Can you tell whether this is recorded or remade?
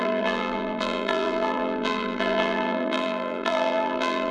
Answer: remade